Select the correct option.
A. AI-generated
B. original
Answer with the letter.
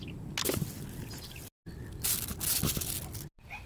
B